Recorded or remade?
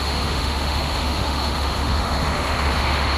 remade